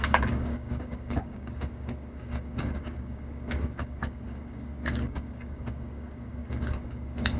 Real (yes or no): no